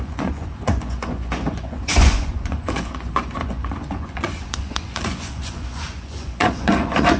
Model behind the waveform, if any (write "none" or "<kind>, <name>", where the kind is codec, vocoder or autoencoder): vocoder, Vocos